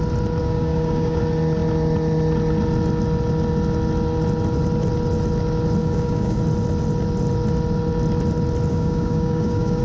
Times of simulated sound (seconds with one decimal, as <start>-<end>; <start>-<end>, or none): 0.4-1.2; 5.8-6.4; 8.7-9.8